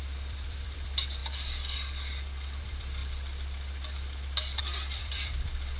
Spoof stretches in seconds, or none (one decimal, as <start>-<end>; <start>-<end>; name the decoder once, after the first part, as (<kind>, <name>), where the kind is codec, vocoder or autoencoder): 0.0-1.2 (vocoder, BigVGAN v2); 2.6-3.0; 4.6-5.8